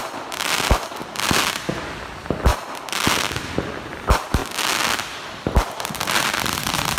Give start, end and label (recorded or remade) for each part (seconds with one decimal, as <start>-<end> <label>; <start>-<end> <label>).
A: 0.0-4.4 remade; 4.4-6.2 recorded; 6.2-7.0 remade